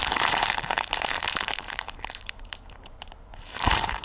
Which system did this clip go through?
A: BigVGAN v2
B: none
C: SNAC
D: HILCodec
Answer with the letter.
A